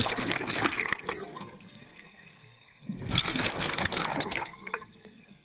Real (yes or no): no